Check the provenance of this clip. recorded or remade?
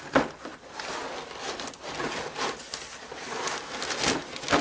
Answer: recorded